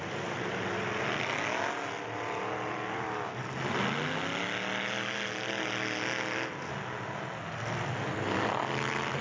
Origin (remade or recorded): recorded